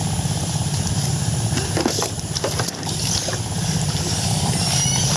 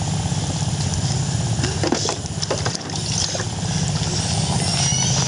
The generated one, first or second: first